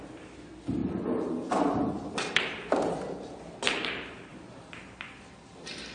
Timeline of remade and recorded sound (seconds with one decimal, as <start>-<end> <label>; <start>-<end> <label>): 0.0-0.8 recorded; 0.8-1.9 remade; 1.9-4.3 recorded; 4.3-5.0 remade; 5.0-5.9 recorded